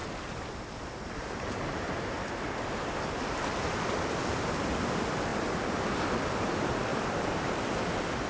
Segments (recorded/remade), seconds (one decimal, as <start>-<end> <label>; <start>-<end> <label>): 0.0-2.2 recorded; 2.2-8.3 remade

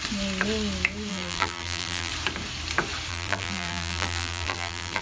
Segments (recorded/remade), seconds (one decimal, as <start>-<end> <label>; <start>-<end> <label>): 0.0-1.1 recorded; 1.1-2.1 remade; 2.1-3.1 recorded; 3.1-5.0 remade

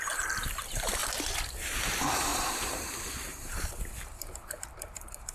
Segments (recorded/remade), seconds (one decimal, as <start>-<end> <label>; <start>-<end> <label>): 0.0-1.0 remade; 1.0-1.9 recorded; 1.9-5.3 remade

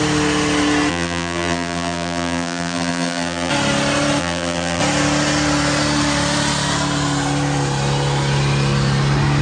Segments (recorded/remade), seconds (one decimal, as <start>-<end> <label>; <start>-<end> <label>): 0.0-0.9 recorded; 0.9-3.5 remade; 3.5-4.2 recorded; 4.2-4.8 remade; 4.8-9.4 recorded